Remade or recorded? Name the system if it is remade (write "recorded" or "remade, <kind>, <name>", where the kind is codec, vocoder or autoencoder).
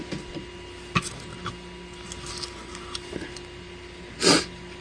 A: recorded